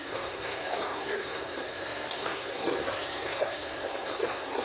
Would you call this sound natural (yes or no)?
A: no